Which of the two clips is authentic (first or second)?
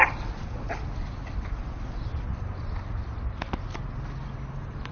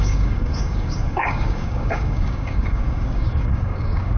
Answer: first